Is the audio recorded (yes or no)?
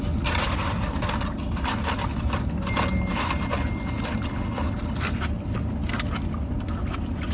yes